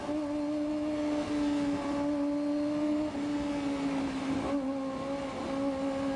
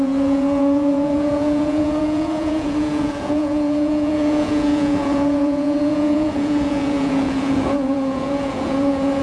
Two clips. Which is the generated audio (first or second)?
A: second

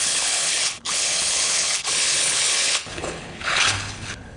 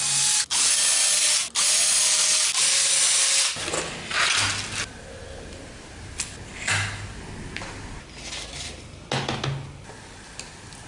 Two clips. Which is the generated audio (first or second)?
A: first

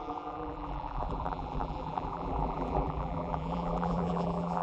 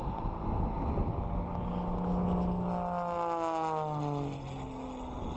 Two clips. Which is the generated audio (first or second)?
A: first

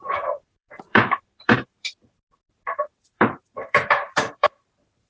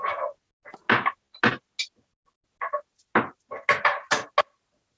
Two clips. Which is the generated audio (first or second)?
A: first